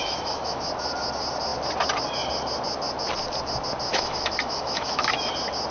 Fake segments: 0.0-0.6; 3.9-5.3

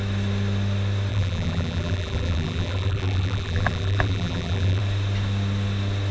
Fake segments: 1.1-4.8

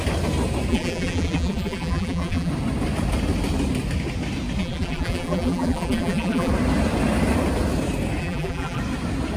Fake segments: 0.7-2.5; 4.6-6.5; 8.2-8.8

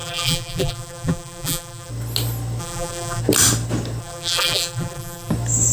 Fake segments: 0.0-1.9; 2.6-3.2; 4.0-5.3

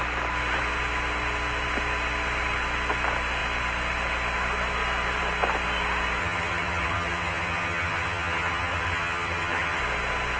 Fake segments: 6.2-9.8

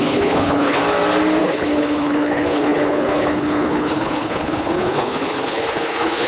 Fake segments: 0.0-0.8; 1.4-6.3

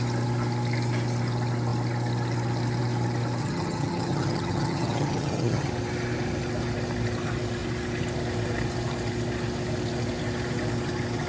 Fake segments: 3.4-5.7